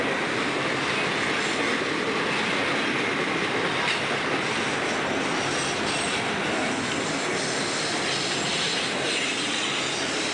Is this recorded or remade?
recorded